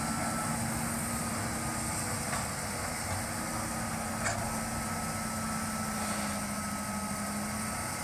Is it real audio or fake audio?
real